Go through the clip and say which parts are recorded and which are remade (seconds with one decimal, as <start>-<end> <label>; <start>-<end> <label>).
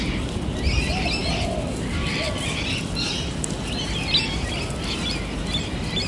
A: 0.0-6.1 recorded